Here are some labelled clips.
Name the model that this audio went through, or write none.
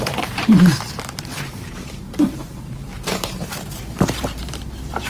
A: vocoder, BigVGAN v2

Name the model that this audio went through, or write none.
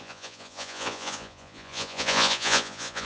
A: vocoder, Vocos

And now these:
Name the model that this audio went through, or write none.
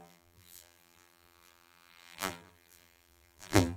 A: vocoder, BigVGAN v2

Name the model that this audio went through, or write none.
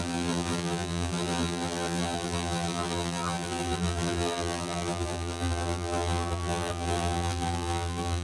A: vocoder, BigVGAN v2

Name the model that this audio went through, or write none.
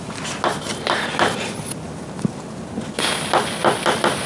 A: none